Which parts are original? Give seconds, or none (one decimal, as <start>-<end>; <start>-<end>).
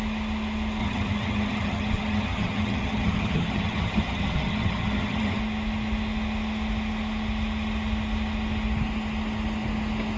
0.0-0.8; 5.4-10.2